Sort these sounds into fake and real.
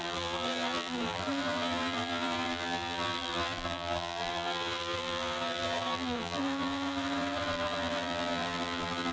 fake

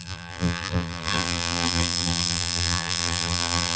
fake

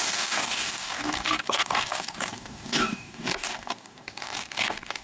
fake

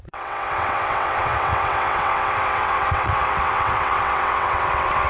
fake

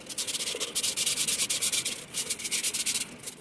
real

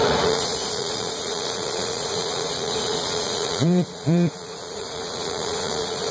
fake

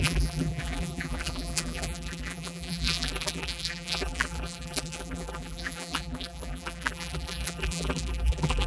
fake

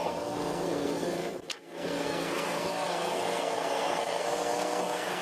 fake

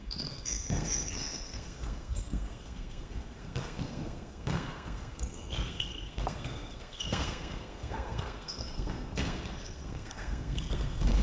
fake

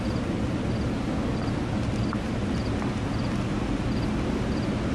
real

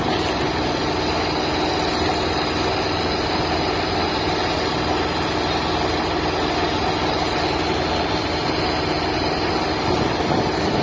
real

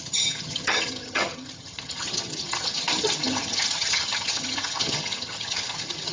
fake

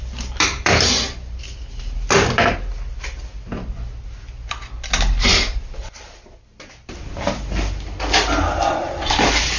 fake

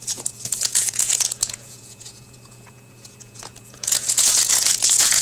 fake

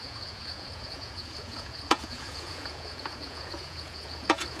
fake